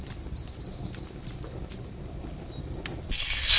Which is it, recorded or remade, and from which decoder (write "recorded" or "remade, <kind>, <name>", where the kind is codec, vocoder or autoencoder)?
recorded